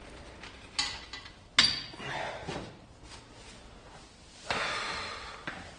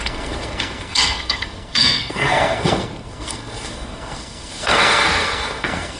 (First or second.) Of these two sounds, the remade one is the second